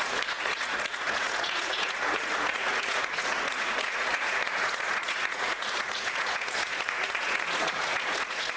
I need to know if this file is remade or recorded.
remade